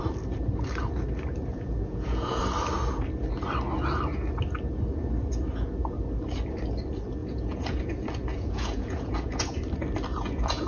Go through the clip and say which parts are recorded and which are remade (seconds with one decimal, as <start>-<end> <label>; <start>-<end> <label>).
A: 0.0-1.5 recorded; 1.5-2.4 remade; 2.4-7.2 recorded; 7.2-7.8 remade; 7.8-8.3 recorded; 8.3-9.6 remade; 9.6-10.1 recorded; 10.1-10.7 remade